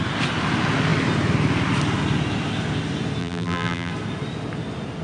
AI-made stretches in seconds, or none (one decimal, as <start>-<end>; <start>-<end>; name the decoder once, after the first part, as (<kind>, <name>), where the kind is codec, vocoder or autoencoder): 3.2-3.9 (vocoder, BigVGAN v2)